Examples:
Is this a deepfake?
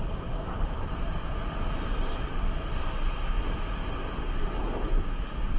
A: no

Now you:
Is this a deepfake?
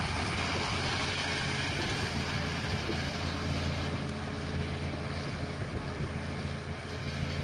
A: no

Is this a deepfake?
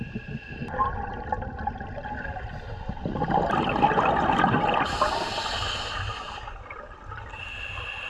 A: no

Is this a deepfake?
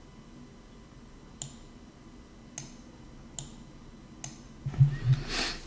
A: no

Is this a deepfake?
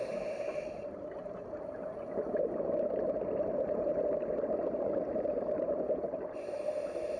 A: no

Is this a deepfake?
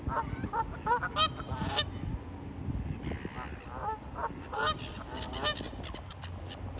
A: no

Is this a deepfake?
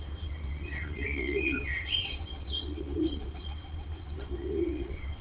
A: yes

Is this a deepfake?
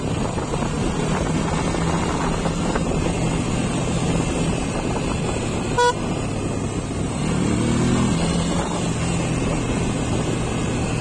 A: no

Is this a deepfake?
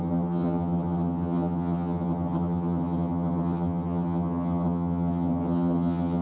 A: yes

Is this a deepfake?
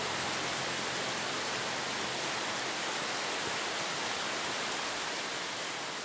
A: no